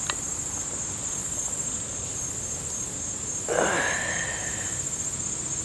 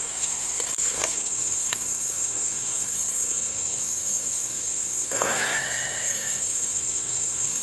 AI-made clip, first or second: second